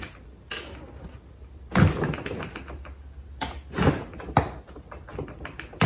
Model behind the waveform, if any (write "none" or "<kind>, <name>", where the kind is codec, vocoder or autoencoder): none